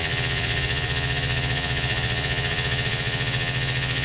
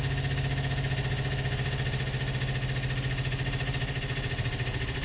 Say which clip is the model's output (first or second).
first